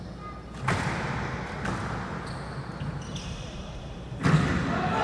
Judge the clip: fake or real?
real